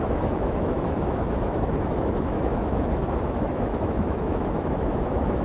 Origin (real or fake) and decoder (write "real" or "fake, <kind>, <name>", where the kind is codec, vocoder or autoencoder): fake, autoencoder, DAC-VAE